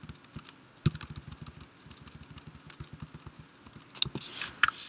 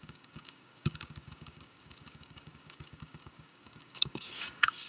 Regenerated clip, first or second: second